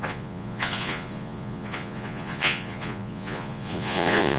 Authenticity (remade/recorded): remade